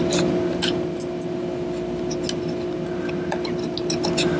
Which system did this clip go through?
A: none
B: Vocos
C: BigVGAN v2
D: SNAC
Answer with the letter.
A